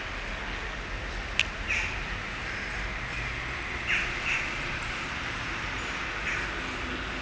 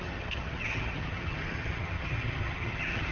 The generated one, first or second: second